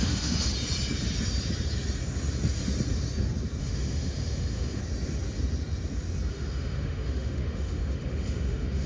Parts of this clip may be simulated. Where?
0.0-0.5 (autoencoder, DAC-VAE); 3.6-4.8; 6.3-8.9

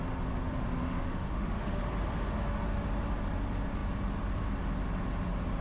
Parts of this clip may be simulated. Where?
0.8-1.8 (autoencoder, DAC-VAE)

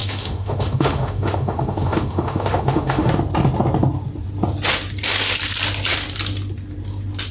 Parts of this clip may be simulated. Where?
0.0-3.1 (autoencoder, DAC-VAE)